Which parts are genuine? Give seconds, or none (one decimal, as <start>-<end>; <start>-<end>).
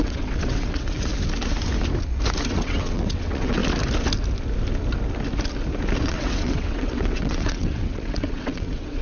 1.1-2.5; 3.6-6.0